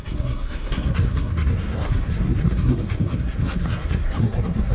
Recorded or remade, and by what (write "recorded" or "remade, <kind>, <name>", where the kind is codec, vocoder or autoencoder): remade, codec, SNAC